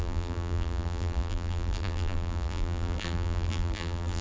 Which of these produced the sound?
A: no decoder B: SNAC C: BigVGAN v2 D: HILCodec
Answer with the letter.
C